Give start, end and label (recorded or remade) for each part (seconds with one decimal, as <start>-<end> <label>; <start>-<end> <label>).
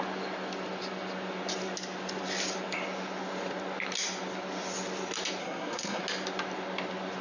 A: 0.0-5.4 recorded; 5.4-6.0 remade; 6.0-7.2 recorded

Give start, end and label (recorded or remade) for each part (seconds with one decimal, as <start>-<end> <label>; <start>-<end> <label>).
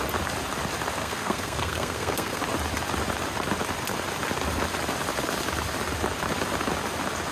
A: 0.0-1.0 recorded; 1.0-2.4 remade; 2.4-7.3 recorded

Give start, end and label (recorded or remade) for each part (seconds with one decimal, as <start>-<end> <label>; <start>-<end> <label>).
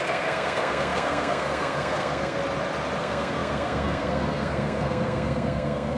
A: 0.0-2.4 remade; 2.4-3.0 recorded; 3.0-6.0 remade